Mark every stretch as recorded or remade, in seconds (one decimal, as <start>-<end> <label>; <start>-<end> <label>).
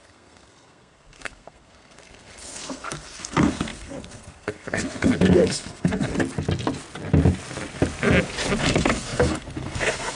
0.0-6.1 remade; 6.1-8.6 recorded; 8.6-10.1 remade